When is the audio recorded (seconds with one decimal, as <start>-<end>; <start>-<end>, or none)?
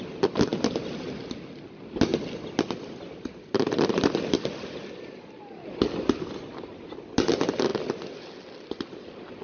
0.0-9.4